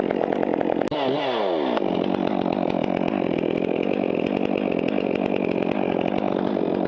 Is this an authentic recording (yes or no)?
yes